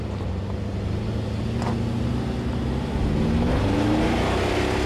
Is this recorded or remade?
recorded